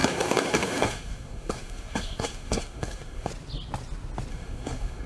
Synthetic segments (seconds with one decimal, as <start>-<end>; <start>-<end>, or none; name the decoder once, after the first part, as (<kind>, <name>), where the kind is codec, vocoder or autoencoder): 0.0-3.3 (codec, SNAC); 4.3-5.1